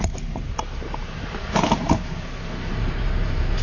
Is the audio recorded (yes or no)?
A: no